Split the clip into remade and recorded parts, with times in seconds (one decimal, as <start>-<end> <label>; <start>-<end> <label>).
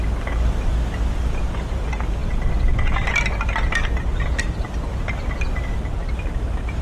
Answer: 0.0-6.8 recorded